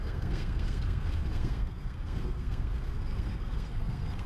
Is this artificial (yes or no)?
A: yes